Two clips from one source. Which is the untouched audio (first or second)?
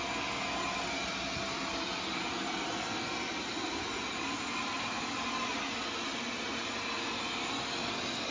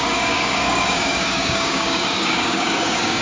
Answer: first